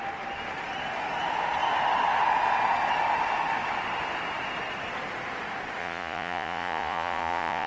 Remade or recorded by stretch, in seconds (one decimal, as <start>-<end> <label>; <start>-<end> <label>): 0.0-5.8 recorded; 5.8-7.7 remade